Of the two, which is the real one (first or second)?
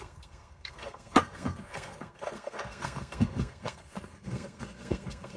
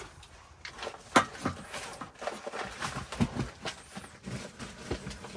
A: second